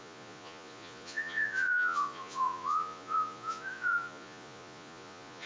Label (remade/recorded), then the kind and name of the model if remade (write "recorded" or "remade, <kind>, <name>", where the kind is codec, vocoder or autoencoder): remade, vocoder, Vocos